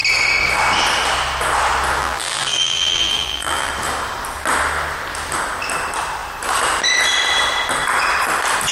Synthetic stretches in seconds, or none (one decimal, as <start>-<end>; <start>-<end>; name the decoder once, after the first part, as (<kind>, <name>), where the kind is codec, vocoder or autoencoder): 2.0-3.7 (vocoder, BigVGAN v2)